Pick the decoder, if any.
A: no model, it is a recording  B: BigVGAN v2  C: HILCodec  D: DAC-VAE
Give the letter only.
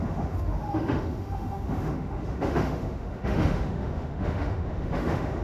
D